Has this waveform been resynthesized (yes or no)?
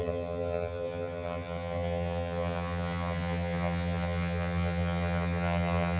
yes